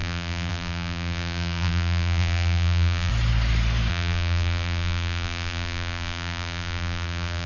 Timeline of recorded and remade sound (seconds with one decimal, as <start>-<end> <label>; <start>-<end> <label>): 0.0-3.1 remade; 3.1-3.9 recorded; 3.9-7.5 remade